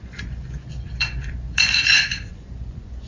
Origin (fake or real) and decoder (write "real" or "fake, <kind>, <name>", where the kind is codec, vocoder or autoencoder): fake, vocoder, Vocos